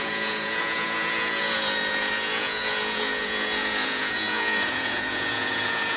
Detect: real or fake fake